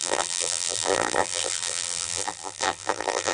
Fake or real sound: fake